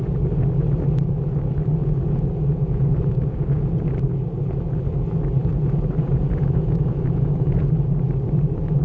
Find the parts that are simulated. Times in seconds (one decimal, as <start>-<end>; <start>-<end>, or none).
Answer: 1.8-3.8; 5.5-7.7